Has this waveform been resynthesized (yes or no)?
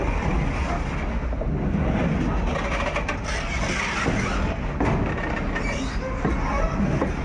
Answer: no